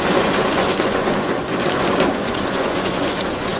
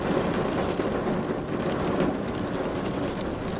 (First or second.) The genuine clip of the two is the second